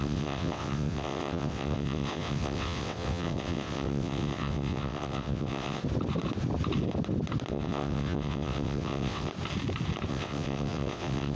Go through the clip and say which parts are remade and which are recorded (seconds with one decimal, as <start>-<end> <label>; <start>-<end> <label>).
0.0-5.8 remade; 5.8-7.5 recorded; 7.5-9.3 remade; 9.3-10.1 recorded; 10.1-11.4 remade